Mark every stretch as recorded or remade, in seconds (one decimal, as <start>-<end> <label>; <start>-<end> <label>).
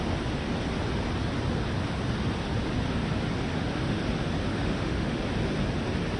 0.0-3.5 recorded; 3.5-4.0 remade; 4.0-4.5 recorded; 4.5-5.2 remade; 5.2-6.2 recorded